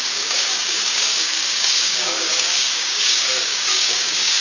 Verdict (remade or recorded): remade